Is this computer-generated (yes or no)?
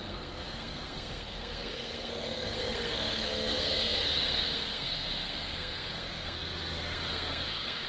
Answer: yes